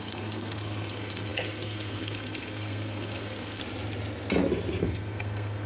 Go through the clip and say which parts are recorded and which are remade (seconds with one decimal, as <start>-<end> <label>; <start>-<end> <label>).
0.0-3.6 remade; 3.6-4.8 recorded; 4.8-5.7 remade